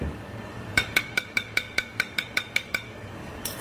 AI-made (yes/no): yes